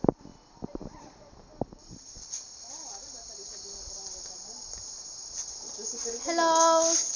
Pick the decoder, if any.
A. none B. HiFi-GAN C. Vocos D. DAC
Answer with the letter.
A